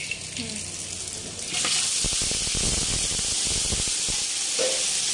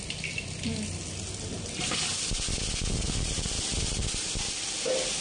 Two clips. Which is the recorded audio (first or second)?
first